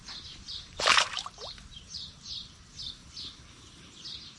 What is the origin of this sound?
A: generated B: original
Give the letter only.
A